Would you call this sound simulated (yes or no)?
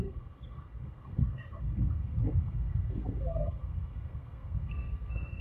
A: yes